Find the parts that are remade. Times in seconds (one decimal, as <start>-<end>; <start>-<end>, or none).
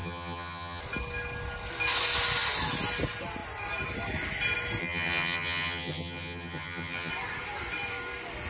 0.0-0.8; 4.8-7.1